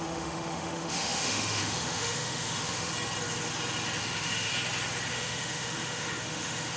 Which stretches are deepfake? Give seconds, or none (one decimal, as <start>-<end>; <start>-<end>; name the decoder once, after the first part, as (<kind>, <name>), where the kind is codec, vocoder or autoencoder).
0.0-2.9 (autoencoder, DAC-VAE); 4.0-4.5; 5.1-6.8